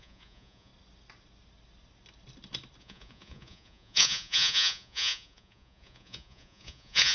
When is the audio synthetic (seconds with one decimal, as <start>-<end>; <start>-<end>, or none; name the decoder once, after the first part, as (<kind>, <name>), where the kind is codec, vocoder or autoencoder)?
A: 0.0-0.7 (vocoder, Vocos); 2.8-7.1